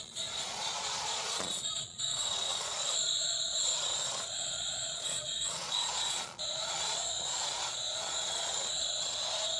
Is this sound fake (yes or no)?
yes